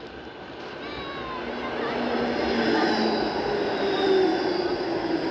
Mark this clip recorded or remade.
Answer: recorded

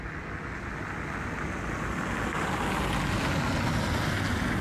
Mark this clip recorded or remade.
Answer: recorded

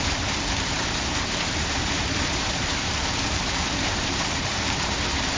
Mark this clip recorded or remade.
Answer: remade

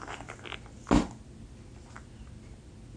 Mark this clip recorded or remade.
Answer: recorded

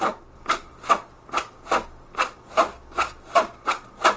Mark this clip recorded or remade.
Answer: recorded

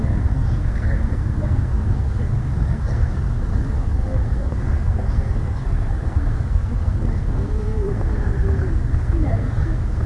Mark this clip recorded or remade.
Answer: remade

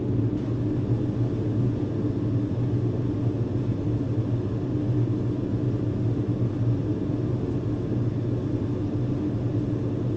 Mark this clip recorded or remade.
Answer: recorded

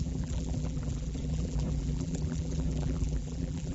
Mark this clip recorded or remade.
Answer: remade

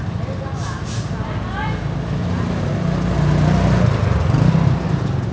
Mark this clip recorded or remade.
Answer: recorded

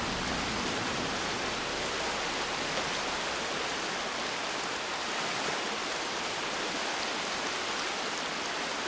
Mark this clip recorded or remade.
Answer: recorded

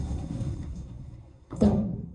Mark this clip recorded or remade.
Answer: remade